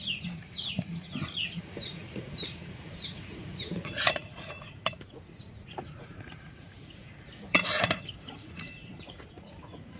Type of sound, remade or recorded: remade